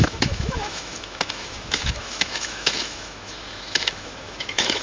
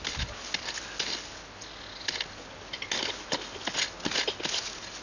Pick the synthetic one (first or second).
first